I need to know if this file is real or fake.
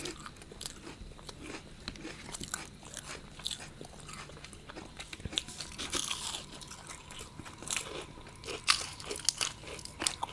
real